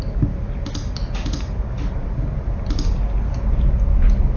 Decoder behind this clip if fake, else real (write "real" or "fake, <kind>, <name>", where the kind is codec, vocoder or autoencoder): real